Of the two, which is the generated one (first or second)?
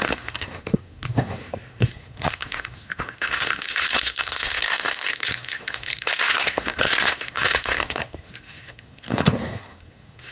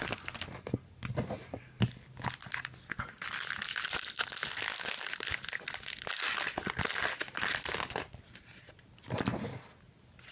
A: first